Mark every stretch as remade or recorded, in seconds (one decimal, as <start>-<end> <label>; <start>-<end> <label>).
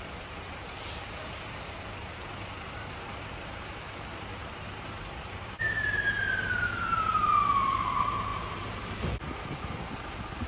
0.0-10.5 remade